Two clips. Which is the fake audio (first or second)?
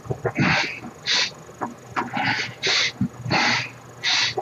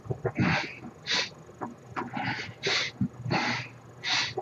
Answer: second